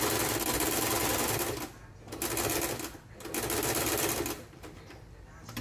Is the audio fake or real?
real